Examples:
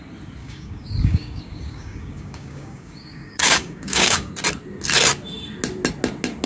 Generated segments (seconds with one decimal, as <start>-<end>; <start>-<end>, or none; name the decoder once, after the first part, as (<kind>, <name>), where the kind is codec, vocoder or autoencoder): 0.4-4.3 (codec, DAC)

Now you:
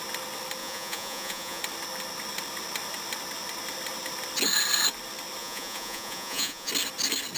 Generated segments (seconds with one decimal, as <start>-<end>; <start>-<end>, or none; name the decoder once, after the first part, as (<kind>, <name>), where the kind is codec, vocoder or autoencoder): 0.6-1.6 (vocoder, Vocos); 5.4-6.7

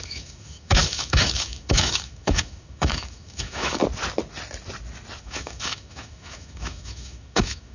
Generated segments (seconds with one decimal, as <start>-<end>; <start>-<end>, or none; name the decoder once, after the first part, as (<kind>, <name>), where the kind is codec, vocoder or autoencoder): 0.0-3.8 (autoencoder, DAC-VAE); 5.2-7.7

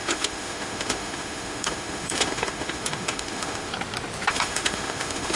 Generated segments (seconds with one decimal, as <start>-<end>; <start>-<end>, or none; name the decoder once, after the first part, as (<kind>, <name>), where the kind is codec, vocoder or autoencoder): 0.0-3.7 (autoencoder, DAC-VAE); 4.3-5.4

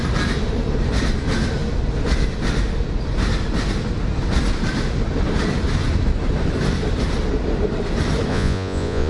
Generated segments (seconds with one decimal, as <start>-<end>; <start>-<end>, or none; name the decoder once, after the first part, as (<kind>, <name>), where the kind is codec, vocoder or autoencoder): 8.3-9.1 (vocoder, Vocos)

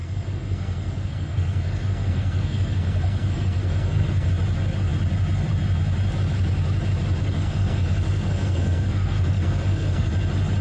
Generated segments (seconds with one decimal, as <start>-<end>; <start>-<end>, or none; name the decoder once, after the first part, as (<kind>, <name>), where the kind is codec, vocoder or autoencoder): 0.0-4.3 (codec, SNAC); 7.2-10.1

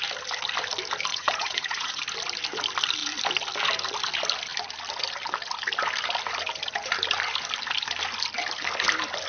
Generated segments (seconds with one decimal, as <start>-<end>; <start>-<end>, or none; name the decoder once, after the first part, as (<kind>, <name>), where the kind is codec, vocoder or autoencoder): 1.1-2.0 (vocoder, Vocos)